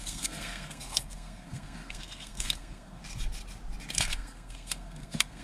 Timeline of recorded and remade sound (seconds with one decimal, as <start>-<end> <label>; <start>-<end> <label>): 0.0-3.0 remade; 3.0-3.9 recorded; 3.9-5.4 remade